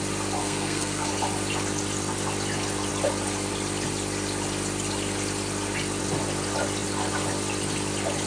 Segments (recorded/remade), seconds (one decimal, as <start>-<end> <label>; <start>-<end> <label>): 0.0-0.4 recorded; 0.4-1.1 remade; 1.1-8.3 recorded